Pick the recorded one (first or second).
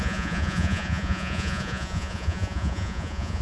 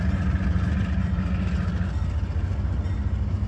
second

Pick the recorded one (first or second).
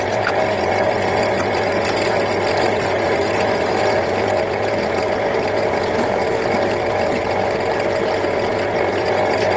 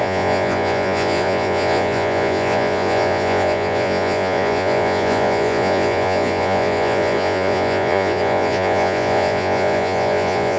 first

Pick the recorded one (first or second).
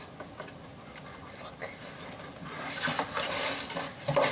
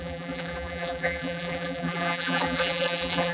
first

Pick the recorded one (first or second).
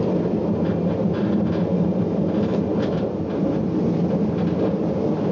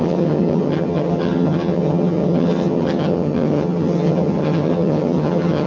first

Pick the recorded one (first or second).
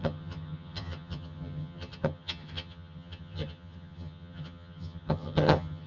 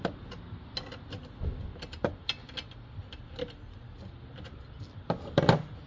second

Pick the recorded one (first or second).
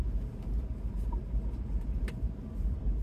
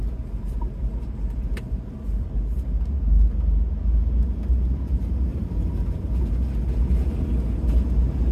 second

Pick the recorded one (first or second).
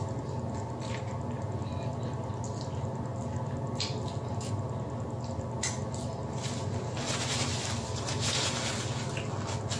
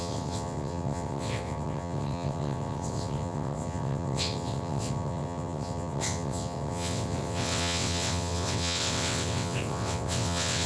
first